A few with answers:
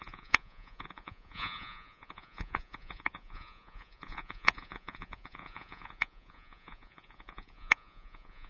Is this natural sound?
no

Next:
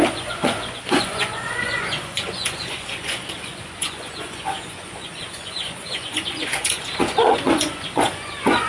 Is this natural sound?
no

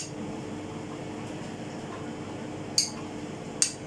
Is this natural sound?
yes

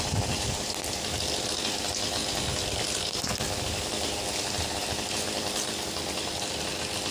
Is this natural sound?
no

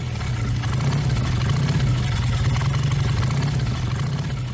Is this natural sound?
yes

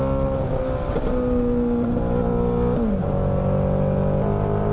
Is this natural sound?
yes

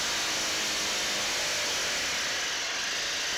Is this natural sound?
yes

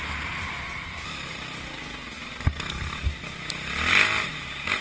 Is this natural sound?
yes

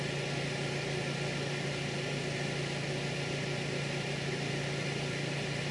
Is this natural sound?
yes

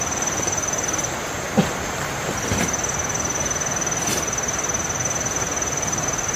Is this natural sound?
no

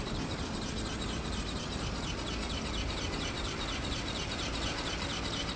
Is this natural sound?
yes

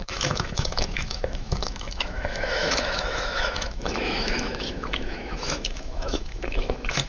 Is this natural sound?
no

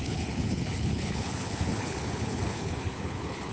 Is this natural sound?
no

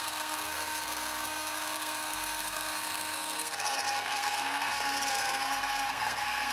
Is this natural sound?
no